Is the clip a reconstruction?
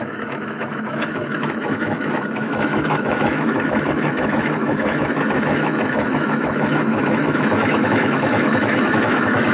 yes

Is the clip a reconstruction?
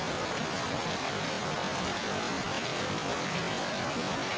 no